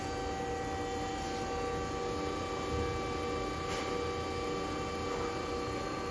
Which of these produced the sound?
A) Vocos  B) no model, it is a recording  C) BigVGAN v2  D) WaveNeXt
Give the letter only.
B